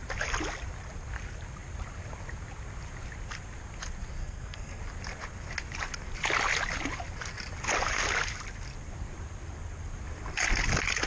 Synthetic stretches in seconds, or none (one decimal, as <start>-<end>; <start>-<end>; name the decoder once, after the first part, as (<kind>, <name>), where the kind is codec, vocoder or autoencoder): 4.2-4.8 (codec, SNAC)